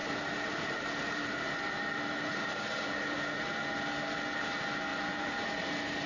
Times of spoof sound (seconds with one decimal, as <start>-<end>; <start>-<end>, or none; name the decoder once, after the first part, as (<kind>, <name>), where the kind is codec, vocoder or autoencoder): 0.0-2.6 (vocoder, BigVGAN v2); 4.9-6.1